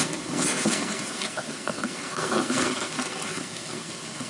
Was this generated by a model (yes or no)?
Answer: yes